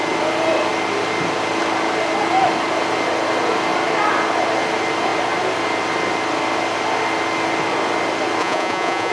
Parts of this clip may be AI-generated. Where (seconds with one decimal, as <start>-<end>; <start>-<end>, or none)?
8.4-9.1